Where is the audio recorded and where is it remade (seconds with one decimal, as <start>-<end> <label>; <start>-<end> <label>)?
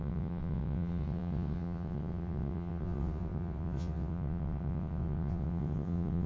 0.0-6.3 remade